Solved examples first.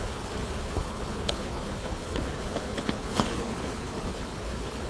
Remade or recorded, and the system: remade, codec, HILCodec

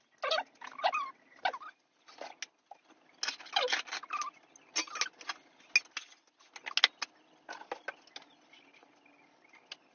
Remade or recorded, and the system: recorded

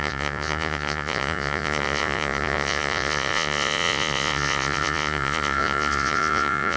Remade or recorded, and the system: remade, vocoder, Vocos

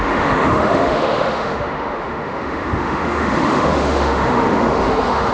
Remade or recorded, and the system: remade, autoencoder, DAC-VAE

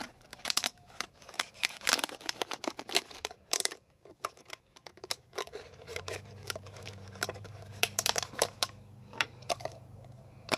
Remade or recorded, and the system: remade, codec, DAC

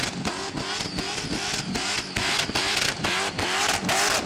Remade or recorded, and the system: recorded